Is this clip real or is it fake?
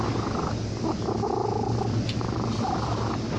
real